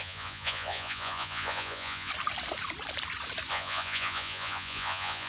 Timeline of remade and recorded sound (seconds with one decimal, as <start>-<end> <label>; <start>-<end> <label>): 0.0-2.1 remade; 2.1-3.5 recorded; 3.5-5.3 remade